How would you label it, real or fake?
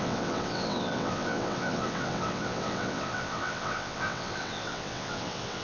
fake